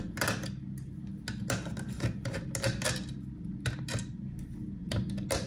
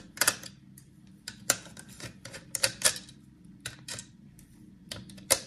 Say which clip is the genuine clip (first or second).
first